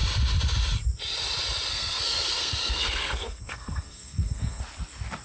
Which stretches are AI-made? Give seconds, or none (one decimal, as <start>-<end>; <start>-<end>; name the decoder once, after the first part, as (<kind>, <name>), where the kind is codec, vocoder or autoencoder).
1.7-4.6 (codec, SNAC)